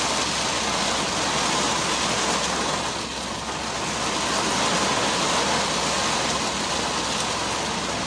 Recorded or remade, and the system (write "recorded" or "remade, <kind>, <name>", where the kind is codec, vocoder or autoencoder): recorded